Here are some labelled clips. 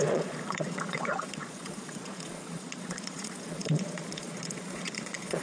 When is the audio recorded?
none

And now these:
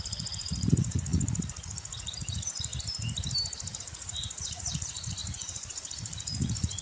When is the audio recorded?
2.7-3.8